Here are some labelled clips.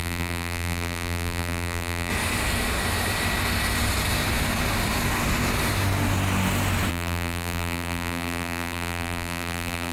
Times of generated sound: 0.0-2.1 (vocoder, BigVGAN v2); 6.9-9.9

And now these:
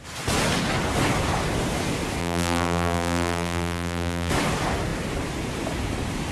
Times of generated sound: 2.2-4.3 (vocoder, BigVGAN v2)